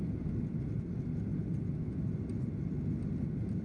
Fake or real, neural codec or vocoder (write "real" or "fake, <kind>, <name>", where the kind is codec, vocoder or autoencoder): real